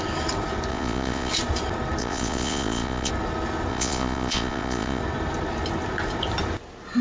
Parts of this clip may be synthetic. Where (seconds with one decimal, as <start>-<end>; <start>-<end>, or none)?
0.7-1.3; 2.0-3.1; 3.7-5.0